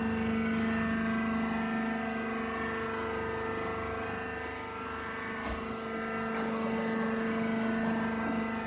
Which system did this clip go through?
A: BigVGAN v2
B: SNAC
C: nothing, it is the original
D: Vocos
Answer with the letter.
C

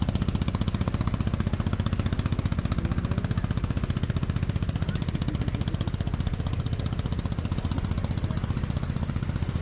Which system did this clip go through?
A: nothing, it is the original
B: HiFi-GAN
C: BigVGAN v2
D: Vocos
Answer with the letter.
A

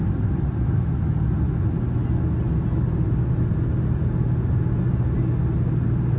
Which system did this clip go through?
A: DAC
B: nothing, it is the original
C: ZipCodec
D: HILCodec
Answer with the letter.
B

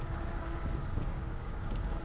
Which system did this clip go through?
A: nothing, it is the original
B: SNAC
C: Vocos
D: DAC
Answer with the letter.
D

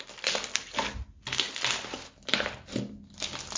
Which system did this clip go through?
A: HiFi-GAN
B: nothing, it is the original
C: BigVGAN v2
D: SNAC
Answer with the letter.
B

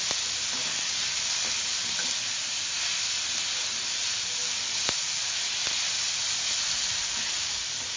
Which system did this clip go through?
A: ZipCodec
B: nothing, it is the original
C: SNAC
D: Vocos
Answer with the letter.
B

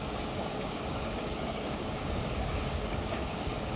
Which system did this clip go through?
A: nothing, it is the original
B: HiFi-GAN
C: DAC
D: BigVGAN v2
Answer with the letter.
C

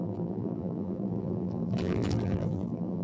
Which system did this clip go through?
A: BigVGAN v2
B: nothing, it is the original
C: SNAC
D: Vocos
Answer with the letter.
A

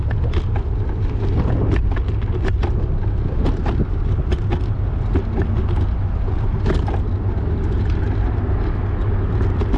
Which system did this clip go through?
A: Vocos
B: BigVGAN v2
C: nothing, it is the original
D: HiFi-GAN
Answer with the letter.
C